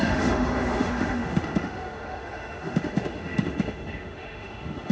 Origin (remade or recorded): remade